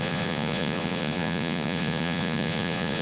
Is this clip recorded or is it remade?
remade